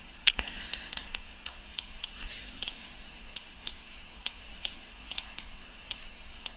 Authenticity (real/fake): fake